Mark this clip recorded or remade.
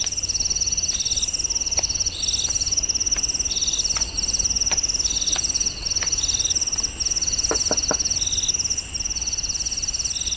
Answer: recorded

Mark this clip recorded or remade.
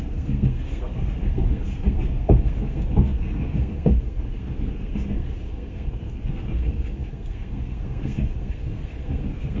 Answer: remade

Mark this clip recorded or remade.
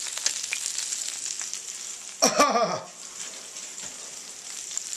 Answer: recorded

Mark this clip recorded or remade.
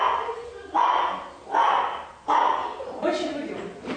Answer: recorded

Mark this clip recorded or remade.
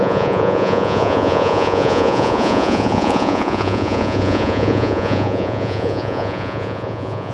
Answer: remade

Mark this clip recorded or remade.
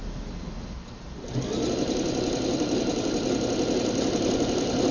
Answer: recorded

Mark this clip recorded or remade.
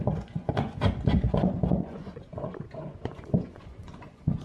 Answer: remade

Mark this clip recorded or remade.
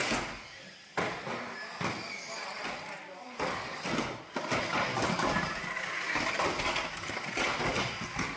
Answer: recorded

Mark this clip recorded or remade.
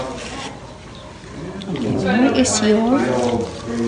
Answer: recorded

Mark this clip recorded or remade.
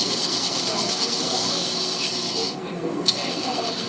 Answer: remade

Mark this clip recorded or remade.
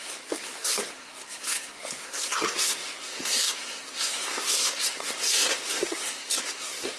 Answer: remade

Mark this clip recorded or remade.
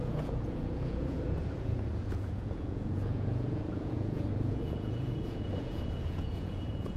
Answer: remade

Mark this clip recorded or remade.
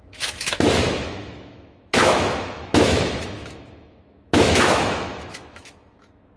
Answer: remade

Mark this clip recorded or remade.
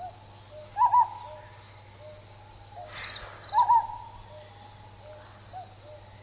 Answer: recorded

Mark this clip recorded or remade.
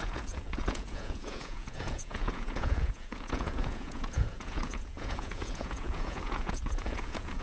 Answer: remade